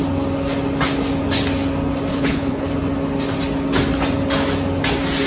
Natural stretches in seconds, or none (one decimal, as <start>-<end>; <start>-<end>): 0.0-2.1; 2.7-5.3